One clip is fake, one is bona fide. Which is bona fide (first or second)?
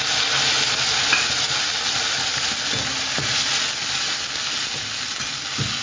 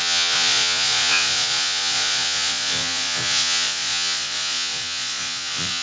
first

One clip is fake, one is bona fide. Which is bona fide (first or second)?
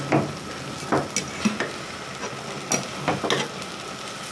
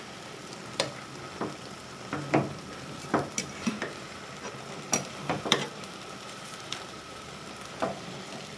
first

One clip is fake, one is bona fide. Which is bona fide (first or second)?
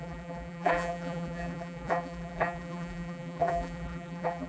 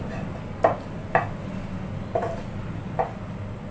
second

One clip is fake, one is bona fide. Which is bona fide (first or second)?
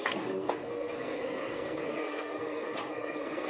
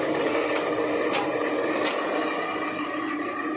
second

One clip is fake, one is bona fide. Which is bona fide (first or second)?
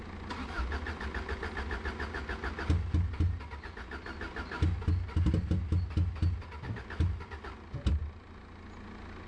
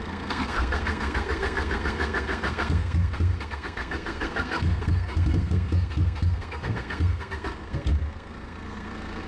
first